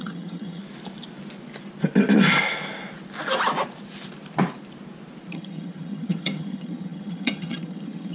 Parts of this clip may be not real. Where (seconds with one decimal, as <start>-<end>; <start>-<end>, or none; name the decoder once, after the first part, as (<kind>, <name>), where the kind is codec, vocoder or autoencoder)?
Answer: 0.0-0.6 (vocoder, HiFi-GAN); 5.3-8.1